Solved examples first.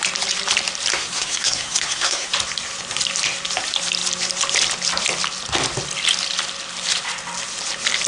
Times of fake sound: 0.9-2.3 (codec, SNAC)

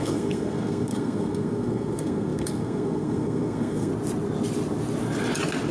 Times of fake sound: 0.0-3.9 (codec, SNAC)

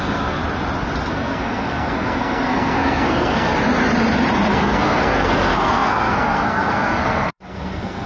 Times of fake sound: 0.0-0.4 (codec, SNAC); 1.1-3.5; 4.5-8.1

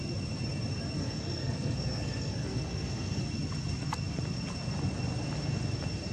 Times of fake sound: 1.0-3.2 (codec, SNAC)

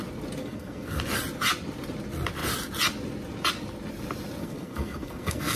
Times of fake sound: 0.4-1.0 (codec, SNAC); 4.4-5.6

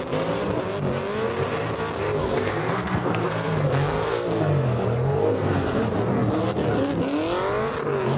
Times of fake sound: 2.2-5.8 (codec, SNAC)

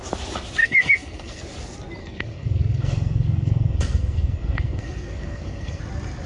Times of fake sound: 0.6-1.4 (codec, SNAC); 2.0-5.8